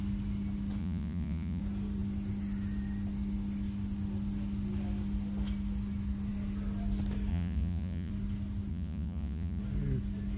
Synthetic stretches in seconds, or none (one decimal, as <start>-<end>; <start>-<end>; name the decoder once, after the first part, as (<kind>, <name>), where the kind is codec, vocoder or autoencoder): 0.8-1.6 (vocoder, Vocos); 7.3-8.1; 8.7-9.6